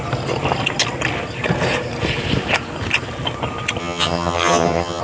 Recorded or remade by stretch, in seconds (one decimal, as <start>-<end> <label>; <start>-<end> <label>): 0.0-3.8 recorded; 3.8-5.0 remade